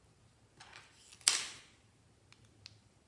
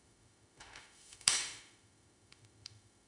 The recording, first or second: first